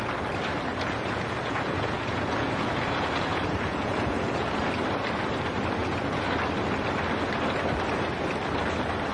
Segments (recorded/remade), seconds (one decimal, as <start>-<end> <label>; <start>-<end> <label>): 0.0-0.7 recorded; 0.7-4.6 remade; 4.6-5.8 recorded; 5.8-6.3 remade; 6.3-9.1 recorded